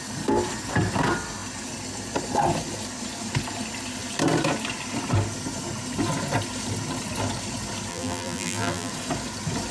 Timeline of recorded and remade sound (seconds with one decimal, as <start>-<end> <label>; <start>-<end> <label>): 0.0-7.9 recorded; 7.9-8.9 remade; 8.9-9.7 recorded